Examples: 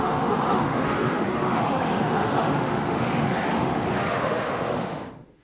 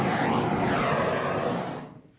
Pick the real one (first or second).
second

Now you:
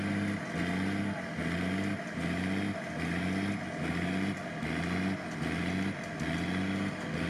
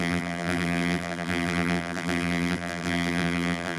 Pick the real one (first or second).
first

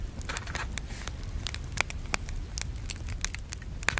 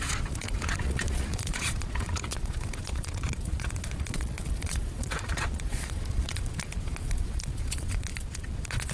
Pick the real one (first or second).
first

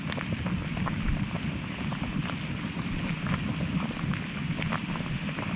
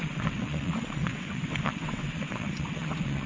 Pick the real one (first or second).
first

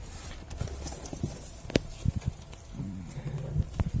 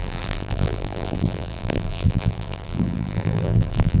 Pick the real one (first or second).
first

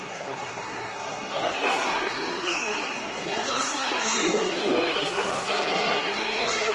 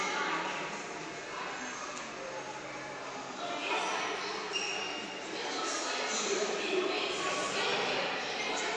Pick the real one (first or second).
second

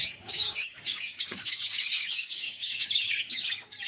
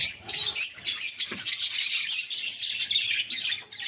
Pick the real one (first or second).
second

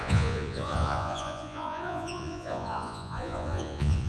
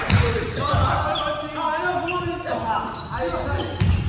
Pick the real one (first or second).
second